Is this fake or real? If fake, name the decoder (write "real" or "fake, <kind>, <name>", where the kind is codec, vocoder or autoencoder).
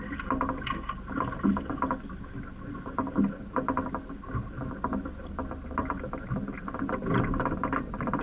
real